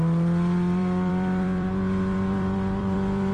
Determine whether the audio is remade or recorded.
remade